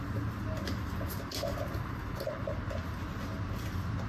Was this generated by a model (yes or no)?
no